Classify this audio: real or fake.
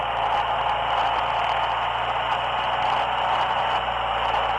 real